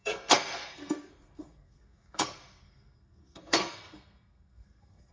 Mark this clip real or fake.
fake